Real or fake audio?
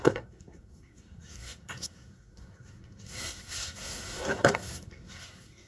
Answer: fake